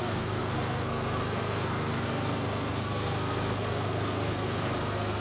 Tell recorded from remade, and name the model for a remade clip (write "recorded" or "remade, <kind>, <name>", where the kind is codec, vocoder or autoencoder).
remade, codec, SNAC